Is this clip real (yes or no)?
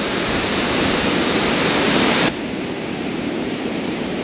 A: no